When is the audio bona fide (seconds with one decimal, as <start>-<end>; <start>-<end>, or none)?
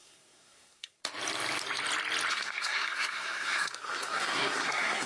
1.0-2.3